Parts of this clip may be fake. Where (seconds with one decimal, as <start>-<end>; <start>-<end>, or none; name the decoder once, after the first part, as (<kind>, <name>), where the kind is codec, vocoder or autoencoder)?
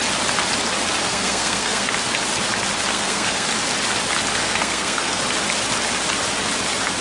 1.0-1.9 (codec, SNAC); 2.9-3.5; 4.4-5.2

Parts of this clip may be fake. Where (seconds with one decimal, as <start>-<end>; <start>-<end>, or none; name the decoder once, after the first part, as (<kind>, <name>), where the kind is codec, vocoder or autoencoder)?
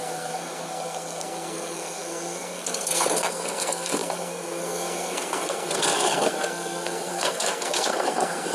0.0-8.5 (codec, SNAC)